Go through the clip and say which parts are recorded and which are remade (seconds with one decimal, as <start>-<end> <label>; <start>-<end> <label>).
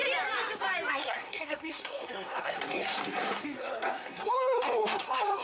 0.0-0.9 recorded; 0.9-5.4 remade